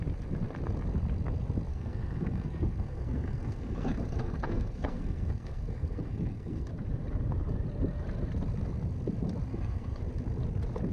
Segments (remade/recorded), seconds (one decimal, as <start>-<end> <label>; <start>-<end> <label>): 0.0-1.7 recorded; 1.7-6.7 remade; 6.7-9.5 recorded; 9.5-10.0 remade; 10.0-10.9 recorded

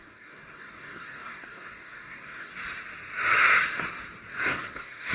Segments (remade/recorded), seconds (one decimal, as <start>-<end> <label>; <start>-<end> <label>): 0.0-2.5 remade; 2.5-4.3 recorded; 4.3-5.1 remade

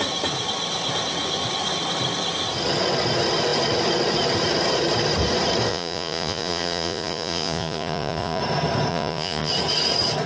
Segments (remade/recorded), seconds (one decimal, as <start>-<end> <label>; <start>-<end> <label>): 0.0-5.7 recorded; 5.7-8.4 remade; 8.4-8.9 recorded; 8.9-9.5 remade; 9.5-10.3 recorded

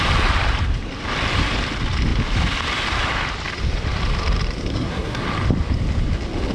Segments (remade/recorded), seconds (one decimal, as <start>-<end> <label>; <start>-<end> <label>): 0.0-4.7 recorded; 4.7-5.2 remade; 5.2-6.5 recorded

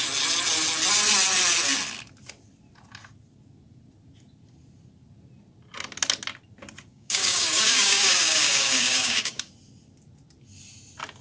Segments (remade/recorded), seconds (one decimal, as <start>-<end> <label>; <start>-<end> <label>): 0.0-6.9 recorded; 6.9-9.5 remade; 9.5-11.2 recorded

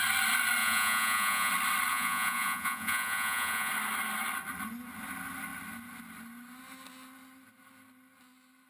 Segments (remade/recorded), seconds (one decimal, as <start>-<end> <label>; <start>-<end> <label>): 0.0-0.6 recorded; 0.6-1.5 remade; 1.5-1.9 recorded; 1.9-3.7 remade; 3.7-8.7 recorded

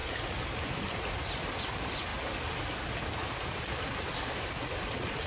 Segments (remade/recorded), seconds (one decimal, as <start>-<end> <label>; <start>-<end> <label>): 0.0-5.3 recorded

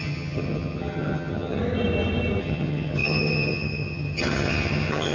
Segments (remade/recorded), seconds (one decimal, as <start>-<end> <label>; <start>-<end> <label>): 0.0-1.6 remade; 1.6-2.4 recorded; 2.4-5.1 remade